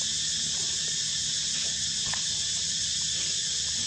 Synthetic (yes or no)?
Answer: no